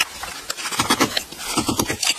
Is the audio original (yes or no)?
yes